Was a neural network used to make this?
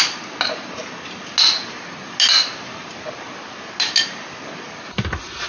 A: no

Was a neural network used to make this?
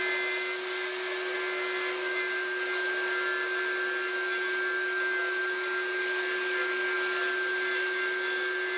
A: no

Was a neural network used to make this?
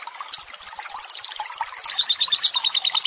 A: no